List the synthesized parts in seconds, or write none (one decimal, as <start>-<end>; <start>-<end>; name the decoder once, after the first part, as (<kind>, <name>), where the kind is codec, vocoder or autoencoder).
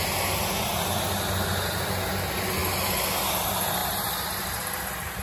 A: none